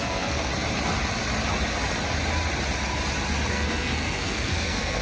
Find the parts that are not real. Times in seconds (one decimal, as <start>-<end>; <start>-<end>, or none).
0.0-0.5; 3.5-5.0